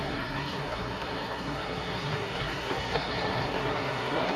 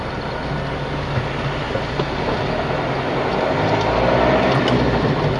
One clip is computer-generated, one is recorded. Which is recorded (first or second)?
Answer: second